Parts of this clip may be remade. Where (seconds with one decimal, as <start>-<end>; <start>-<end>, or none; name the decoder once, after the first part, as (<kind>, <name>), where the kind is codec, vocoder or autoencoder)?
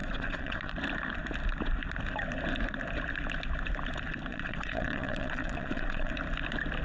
0.0-0.7 (vocoder, Vocos); 4.3-6.1